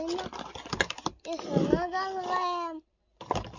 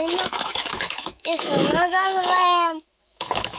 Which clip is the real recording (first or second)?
first